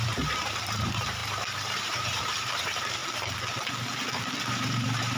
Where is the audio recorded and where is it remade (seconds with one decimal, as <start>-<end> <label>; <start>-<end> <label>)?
0.0-3.0 remade; 3.0-4.4 recorded; 4.4-5.2 remade

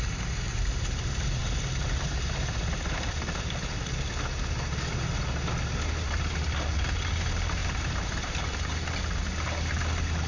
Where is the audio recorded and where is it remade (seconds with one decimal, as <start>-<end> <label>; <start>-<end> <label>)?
0.0-7.6 recorded; 7.6-8.5 remade; 8.5-10.3 recorded

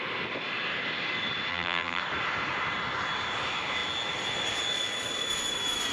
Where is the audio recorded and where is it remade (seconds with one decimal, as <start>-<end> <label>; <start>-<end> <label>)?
0.0-1.5 recorded; 1.5-2.0 remade; 2.0-5.9 recorded

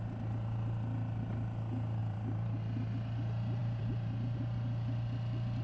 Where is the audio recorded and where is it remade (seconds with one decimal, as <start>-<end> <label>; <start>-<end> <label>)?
0.0-2.0 recorded; 2.0-2.6 remade; 2.6-3.6 recorded; 3.6-4.4 remade; 4.4-5.6 recorded

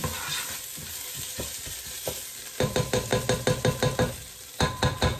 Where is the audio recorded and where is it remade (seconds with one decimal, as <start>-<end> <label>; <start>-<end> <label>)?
0.0-1.7 recorded; 1.7-3.1 remade; 3.1-4.3 recorded; 4.3-5.2 remade

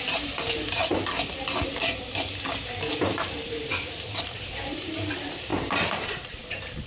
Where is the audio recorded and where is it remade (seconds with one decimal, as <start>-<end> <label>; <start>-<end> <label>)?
0.0-0.9 remade; 0.9-1.7 recorded; 1.7-6.9 remade